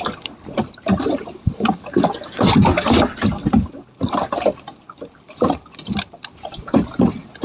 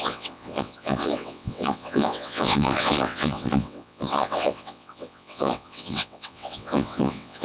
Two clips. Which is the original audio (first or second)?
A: first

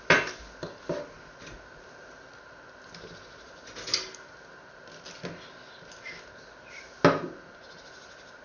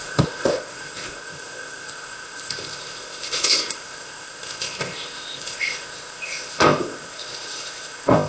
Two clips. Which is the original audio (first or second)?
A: first